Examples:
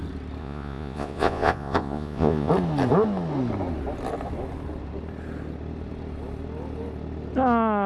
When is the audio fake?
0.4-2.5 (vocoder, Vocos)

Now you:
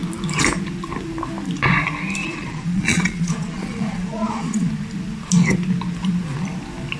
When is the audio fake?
2.2-4.7 (vocoder, Vocos)